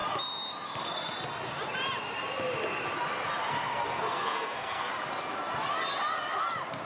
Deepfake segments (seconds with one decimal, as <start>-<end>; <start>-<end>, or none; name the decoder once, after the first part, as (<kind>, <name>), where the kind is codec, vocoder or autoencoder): 3.5-4.9 (codec, SNAC)